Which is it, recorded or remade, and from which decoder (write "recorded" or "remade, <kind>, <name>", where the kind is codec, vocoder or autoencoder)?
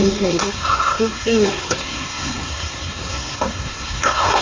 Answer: remade, codec, SNAC